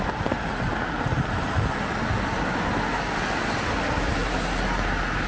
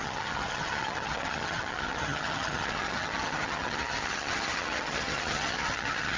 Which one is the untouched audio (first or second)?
first